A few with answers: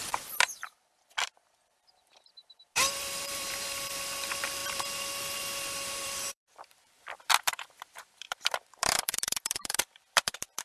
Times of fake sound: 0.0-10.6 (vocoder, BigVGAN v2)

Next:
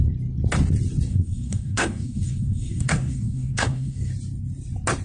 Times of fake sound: 1.1-4.1 (codec, SNAC)

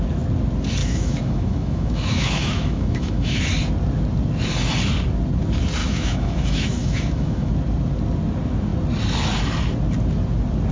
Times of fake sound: 0.8-3.4 (autoencoder, DAC-VAE); 5.8-7.5